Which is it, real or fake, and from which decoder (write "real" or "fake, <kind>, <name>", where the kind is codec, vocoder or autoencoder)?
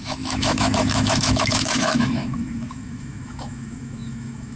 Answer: fake, autoencoder, DAC-VAE